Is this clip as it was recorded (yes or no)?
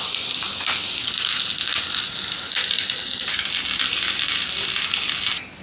yes